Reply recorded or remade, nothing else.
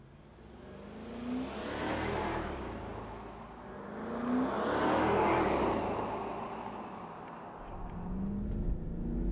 recorded